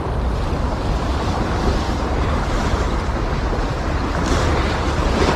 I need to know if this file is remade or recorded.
recorded